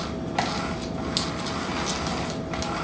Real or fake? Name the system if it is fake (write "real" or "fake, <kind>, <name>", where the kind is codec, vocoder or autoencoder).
real